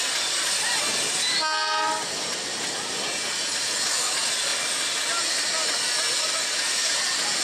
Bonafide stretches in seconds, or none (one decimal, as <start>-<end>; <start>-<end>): 0.0-7.4